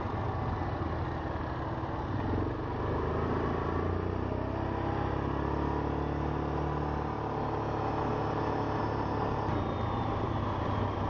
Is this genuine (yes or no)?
yes